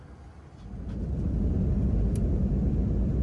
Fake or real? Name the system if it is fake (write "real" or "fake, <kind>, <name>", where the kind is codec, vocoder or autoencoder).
real